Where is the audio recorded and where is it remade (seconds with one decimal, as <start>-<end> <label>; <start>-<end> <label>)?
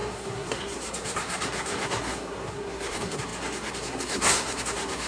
0.0-5.1 remade